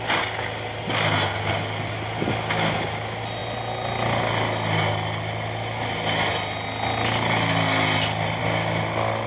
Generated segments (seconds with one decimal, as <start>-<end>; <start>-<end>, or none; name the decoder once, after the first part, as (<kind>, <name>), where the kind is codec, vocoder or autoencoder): none